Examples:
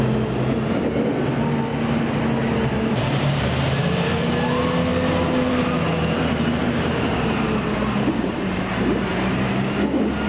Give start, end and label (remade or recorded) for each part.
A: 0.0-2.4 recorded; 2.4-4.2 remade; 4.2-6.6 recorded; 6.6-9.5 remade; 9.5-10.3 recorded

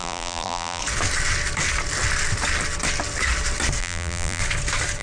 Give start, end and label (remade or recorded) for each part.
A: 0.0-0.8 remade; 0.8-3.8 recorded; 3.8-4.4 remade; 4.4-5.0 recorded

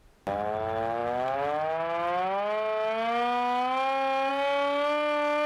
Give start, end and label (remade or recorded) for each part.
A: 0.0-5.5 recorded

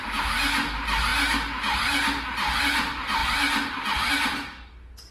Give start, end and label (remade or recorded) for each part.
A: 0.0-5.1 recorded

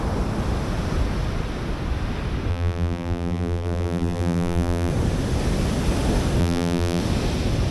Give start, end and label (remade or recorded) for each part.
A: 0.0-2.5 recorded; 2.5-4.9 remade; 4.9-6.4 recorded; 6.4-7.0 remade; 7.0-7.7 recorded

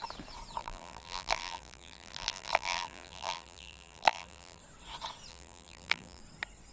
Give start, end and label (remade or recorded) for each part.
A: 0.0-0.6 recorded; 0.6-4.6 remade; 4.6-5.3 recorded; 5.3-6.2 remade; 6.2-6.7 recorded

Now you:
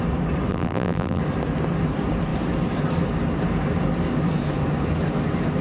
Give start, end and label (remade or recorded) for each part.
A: 0.0-0.5 recorded; 0.5-1.2 remade; 1.2-5.6 recorded